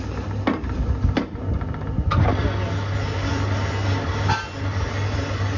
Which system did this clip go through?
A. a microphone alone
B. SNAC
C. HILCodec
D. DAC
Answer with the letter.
A